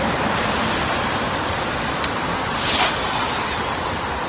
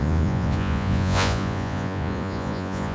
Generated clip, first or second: second